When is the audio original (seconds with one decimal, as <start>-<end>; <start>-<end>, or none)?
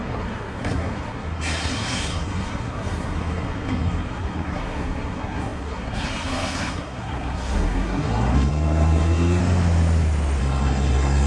9.4-10.4